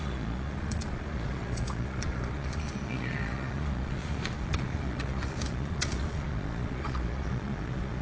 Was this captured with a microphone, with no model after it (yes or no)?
no